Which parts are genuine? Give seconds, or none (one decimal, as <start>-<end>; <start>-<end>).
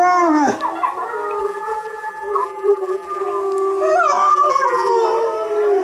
0.0-1.4; 3.2-4.3; 4.9-5.8